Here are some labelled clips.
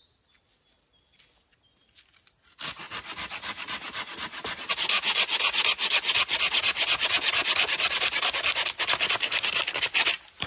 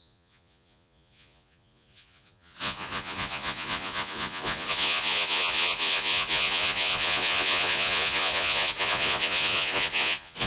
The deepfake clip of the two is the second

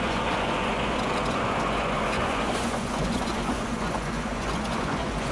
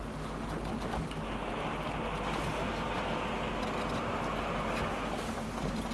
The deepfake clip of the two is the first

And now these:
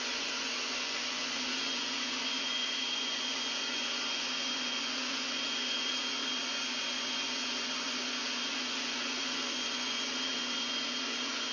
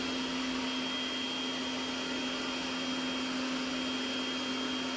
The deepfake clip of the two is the first